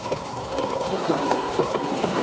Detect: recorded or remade remade